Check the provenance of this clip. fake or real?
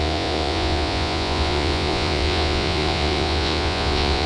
fake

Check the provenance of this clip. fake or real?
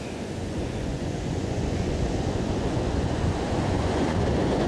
fake